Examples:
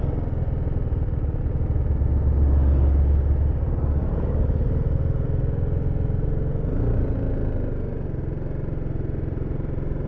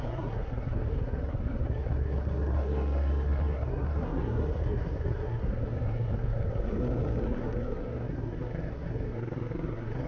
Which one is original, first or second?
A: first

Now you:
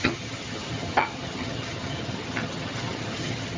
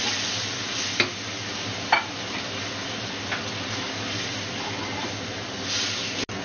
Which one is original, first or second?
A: second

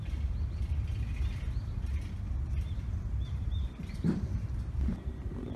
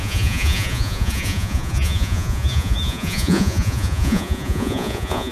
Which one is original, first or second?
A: first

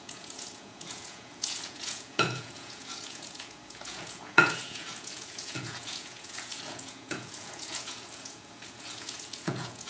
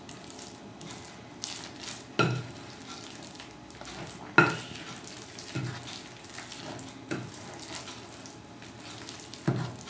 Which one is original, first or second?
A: second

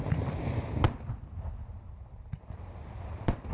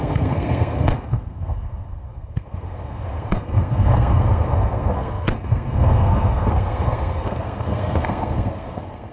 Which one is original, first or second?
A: first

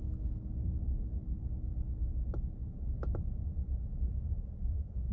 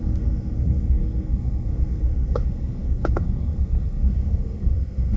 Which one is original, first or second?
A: first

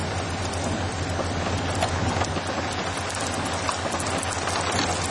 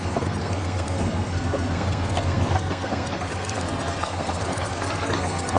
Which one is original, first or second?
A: first